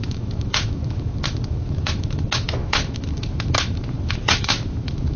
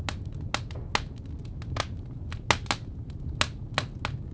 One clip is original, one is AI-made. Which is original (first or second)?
second